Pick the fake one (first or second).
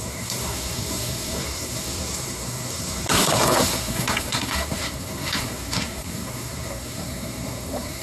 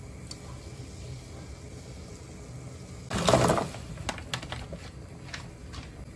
first